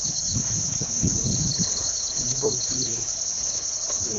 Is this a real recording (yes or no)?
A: no